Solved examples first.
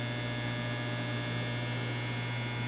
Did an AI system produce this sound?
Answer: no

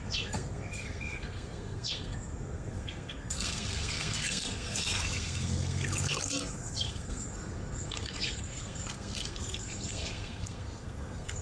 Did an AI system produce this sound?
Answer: yes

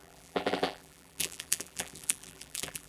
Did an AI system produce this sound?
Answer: yes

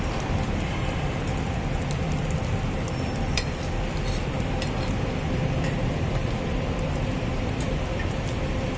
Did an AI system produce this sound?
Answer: yes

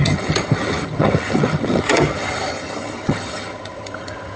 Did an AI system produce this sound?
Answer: yes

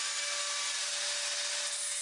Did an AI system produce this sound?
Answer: no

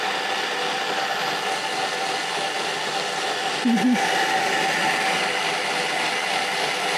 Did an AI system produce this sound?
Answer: no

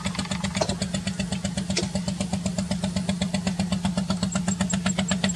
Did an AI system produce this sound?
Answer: no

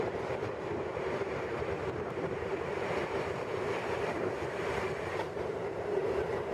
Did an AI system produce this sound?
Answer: yes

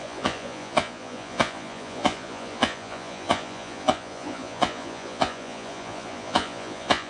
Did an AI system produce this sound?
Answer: yes